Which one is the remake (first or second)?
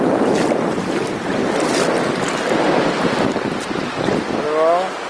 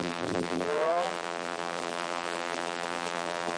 second